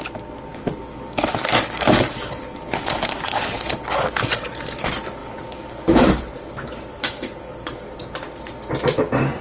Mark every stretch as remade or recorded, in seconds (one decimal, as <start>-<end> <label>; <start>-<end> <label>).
0.0-0.5 recorded; 0.5-4.5 remade; 4.5-5.2 recorded; 5.2-6.2 remade; 6.2-6.9 recorded; 6.9-7.9 remade; 7.9-9.4 recorded